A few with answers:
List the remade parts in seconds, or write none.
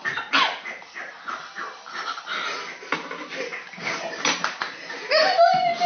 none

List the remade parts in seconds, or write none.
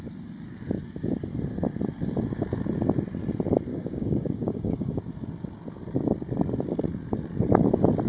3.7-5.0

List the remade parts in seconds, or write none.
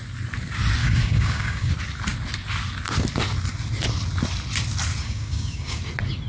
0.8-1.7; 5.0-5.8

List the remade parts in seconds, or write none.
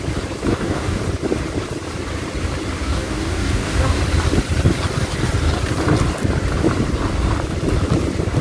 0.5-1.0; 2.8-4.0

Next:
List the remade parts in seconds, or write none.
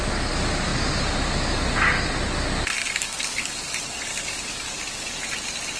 2.8-3.5; 4.1-5.2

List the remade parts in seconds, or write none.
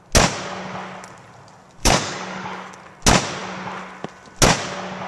1.8-2.7